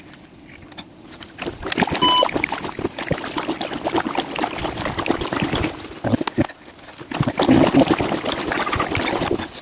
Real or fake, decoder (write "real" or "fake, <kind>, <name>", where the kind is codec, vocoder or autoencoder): real